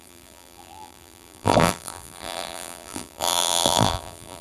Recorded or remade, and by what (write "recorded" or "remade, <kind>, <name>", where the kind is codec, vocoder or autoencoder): remade, vocoder, BigVGAN v2